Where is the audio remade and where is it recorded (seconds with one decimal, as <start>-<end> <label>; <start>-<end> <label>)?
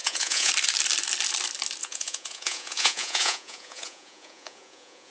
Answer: 0.0-0.5 remade; 0.5-1.8 recorded; 1.8-5.1 remade